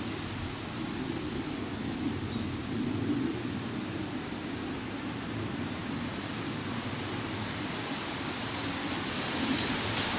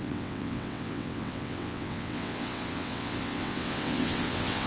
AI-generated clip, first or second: second